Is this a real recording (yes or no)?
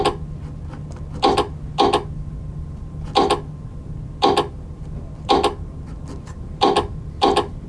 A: yes